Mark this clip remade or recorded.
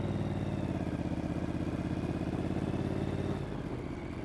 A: recorded